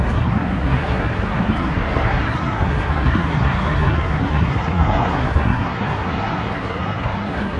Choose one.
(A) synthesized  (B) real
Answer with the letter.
A